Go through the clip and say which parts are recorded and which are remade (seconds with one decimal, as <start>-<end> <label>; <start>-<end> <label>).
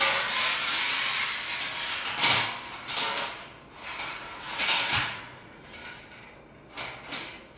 0.0-4.1 recorded; 4.1-5.6 remade; 5.6-7.6 recorded